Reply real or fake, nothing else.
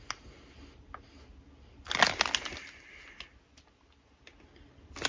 real